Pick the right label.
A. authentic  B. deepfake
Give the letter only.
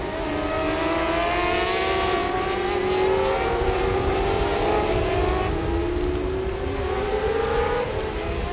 A